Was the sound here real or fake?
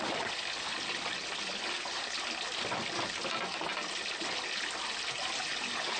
real